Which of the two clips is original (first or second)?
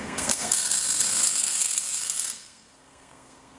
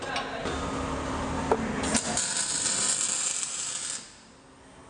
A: second